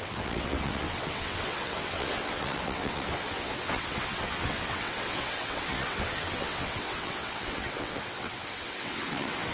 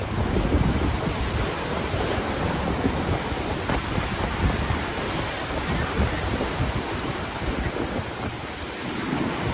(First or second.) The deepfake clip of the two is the first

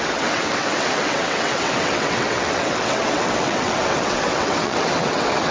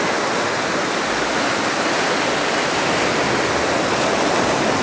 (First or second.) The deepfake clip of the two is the first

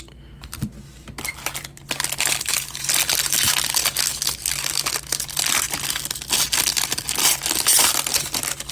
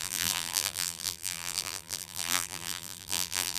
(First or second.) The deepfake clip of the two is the second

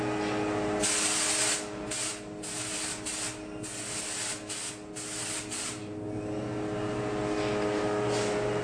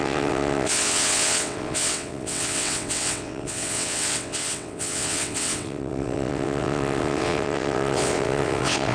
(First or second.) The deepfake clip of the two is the second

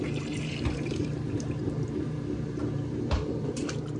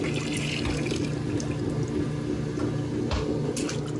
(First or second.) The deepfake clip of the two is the first